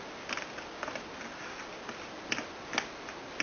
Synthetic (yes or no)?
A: no